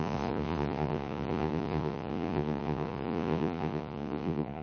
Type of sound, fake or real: fake